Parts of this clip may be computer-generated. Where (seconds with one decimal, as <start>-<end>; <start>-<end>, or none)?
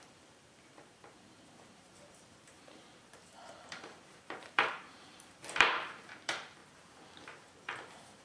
0.0-6.6; 7.4-8.2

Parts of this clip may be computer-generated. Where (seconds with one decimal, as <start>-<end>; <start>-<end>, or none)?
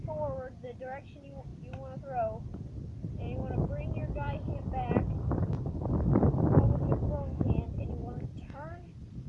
4.0-7.1; 8.0-9.3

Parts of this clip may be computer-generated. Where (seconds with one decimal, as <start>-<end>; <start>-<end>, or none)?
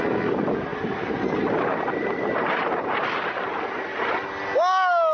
0.7-3.8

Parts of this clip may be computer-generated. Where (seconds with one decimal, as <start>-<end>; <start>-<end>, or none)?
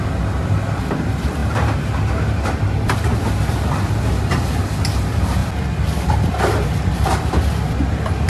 1.4-3.2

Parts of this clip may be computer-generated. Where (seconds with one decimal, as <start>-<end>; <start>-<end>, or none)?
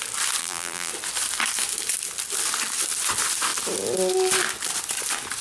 0.4-0.9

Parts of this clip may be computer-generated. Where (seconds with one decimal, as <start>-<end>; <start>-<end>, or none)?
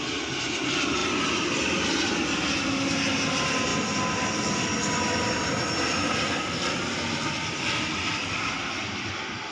0.0-1.0; 2.0-3.7; 8.3-9.5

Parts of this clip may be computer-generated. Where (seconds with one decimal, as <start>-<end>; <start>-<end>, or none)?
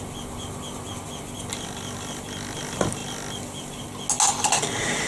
none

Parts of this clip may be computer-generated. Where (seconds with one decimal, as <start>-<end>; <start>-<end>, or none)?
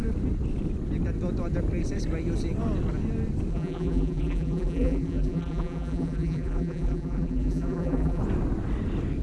3.5-8.2